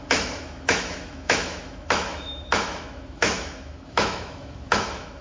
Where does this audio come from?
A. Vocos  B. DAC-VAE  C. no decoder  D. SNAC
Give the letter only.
B